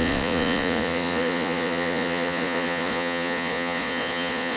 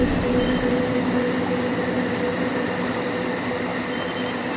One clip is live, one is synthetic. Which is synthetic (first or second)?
first